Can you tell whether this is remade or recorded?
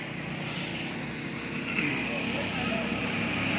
recorded